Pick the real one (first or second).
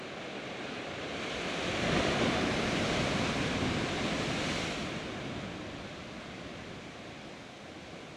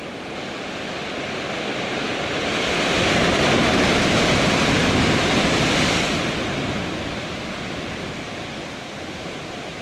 first